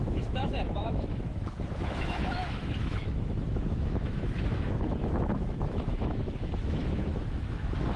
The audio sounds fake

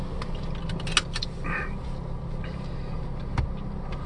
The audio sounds real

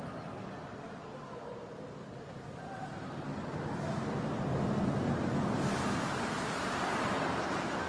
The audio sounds real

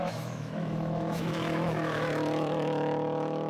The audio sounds fake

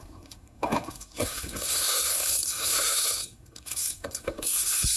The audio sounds fake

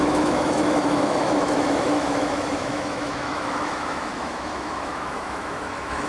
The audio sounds fake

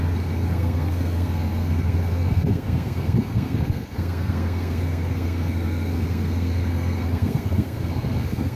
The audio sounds fake